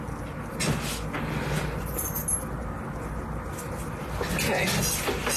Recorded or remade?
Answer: recorded